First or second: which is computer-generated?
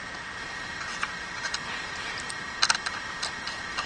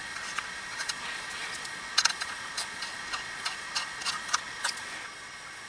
second